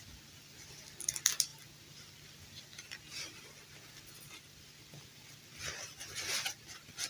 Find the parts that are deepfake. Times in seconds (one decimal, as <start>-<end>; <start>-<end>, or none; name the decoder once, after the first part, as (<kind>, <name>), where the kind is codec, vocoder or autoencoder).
none